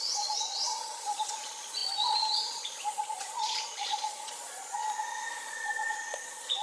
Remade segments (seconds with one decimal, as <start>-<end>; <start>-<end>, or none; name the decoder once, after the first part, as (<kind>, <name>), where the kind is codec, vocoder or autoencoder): 0.0-4.8 (vocoder, Vocos); 5.4-6.6